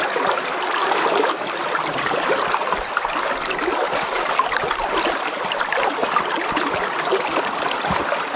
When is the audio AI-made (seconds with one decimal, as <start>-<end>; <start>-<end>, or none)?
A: 0.0-4.8; 6.0-7.4

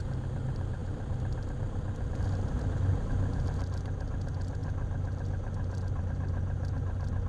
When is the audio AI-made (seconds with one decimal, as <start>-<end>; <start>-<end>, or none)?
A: none

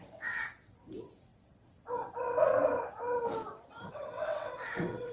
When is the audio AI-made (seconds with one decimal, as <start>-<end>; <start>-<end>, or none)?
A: 0.0-2.5; 3.9-5.1